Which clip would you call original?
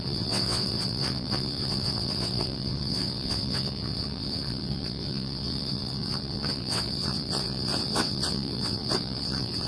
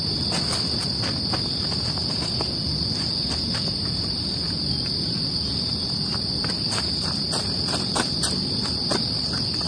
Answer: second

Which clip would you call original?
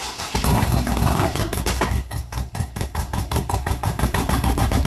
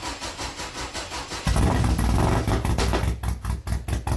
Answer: second